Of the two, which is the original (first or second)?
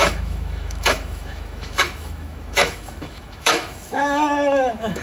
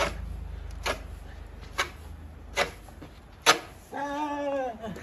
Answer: second